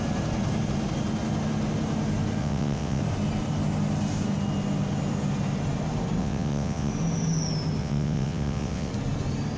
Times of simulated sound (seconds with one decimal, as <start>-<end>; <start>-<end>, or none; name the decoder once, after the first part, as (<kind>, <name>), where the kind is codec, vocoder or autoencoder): 2.4-3.0 (vocoder, WaveNeXt); 6.2-6.9; 7.8-8.9